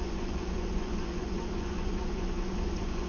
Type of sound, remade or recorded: remade